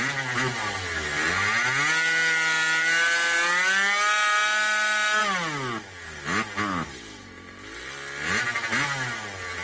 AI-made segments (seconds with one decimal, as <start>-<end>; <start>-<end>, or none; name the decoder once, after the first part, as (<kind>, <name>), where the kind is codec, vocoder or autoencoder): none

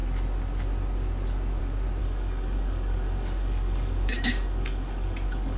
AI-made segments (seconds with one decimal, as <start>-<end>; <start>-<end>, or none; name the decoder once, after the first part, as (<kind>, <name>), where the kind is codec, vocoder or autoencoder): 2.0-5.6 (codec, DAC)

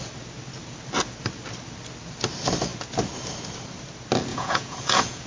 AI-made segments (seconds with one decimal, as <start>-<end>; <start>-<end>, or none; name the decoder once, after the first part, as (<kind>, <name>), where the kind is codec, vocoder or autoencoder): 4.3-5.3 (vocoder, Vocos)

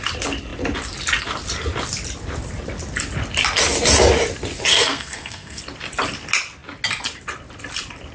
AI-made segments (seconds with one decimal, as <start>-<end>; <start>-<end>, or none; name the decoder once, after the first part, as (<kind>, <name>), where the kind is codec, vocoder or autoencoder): 4.7-5.6 (codec, SNAC)

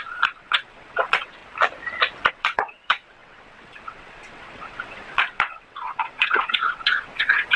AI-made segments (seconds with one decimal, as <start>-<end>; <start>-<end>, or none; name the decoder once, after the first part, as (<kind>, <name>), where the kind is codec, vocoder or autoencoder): 0.0-1.4 (vocoder, WaveNeXt); 2.3-7.6